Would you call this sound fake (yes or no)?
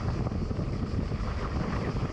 yes